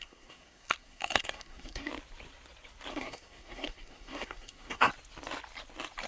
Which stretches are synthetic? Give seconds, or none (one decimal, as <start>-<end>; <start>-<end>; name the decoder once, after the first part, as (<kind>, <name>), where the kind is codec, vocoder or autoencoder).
0.0-1.9 (codec, SNAC); 2.9-4.9

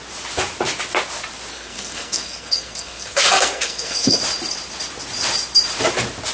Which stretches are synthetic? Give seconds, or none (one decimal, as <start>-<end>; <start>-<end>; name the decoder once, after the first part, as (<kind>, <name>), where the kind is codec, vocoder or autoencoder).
1.5-4.2 (codec, SNAC)

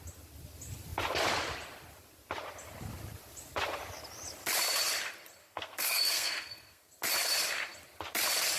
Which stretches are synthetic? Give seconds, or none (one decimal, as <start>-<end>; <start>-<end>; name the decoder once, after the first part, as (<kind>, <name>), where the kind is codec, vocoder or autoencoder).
5.4-6.9 (codec, SNAC)

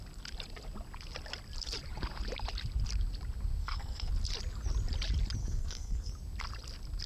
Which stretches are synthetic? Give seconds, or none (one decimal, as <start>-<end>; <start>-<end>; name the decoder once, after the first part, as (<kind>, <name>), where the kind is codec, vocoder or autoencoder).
3.6-4.1 (codec, SNAC); 5.4-6.1

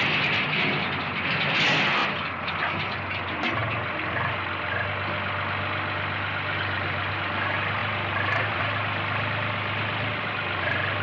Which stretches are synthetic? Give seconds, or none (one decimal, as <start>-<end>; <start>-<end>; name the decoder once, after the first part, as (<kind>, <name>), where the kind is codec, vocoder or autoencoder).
none

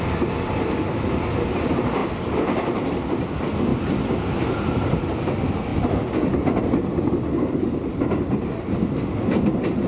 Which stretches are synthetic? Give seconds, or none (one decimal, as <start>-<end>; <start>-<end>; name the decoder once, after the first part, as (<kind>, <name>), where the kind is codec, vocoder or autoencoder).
none

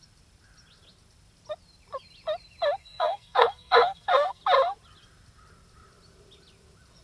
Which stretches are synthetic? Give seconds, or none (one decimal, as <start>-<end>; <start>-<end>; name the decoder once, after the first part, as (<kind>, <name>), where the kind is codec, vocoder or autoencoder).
2.8-4.4 (codec, SNAC)

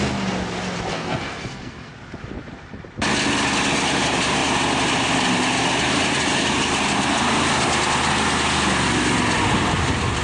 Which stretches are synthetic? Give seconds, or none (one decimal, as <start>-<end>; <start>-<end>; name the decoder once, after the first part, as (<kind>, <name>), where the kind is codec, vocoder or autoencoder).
0.9-1.9 (codec, SNAC)